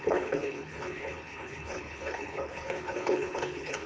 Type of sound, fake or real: fake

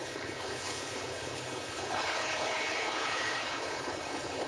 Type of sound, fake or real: fake